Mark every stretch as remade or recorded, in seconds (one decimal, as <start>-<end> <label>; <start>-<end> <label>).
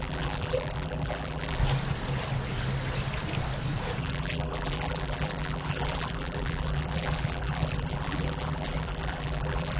0.0-1.6 remade; 1.6-4.0 recorded; 4.0-9.8 remade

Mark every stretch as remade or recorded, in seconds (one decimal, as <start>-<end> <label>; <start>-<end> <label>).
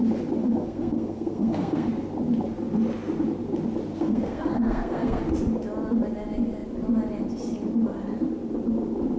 0.0-0.4 recorded; 0.4-1.9 remade; 1.9-3.9 recorded; 3.9-5.2 remade; 5.2-9.2 recorded